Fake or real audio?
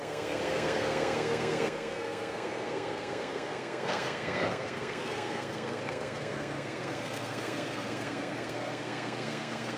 fake